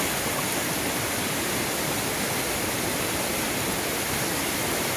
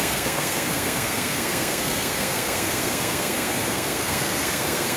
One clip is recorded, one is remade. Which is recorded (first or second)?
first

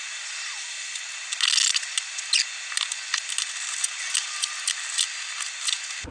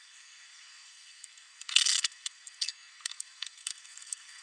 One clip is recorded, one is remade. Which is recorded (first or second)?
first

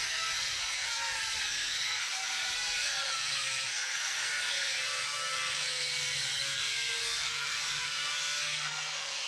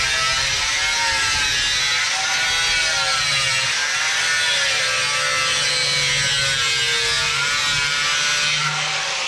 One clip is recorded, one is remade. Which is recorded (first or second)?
second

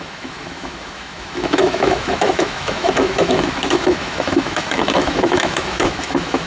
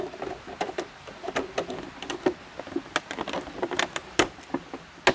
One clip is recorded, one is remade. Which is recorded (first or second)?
second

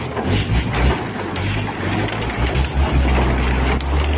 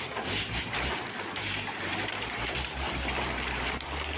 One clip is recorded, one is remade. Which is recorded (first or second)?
first